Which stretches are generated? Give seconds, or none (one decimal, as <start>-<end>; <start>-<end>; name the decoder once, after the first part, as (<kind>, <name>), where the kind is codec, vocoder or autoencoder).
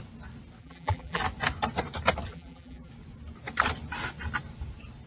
0.6-1.2 (vocoder, BigVGAN v2); 2.3-2.9